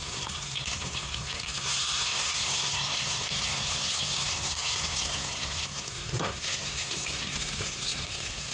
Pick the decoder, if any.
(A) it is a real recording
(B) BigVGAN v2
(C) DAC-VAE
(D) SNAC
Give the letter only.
D